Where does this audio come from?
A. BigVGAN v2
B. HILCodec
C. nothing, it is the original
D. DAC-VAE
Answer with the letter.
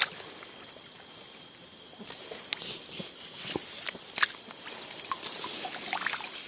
C